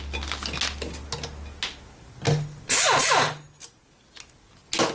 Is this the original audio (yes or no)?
yes